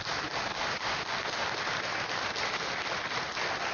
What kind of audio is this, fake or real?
real